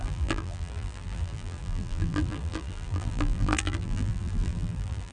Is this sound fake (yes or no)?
yes